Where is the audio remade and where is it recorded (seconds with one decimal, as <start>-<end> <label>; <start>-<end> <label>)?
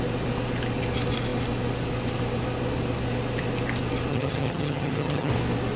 0.0-4.1 recorded; 4.1-5.3 remade; 5.3-5.8 recorded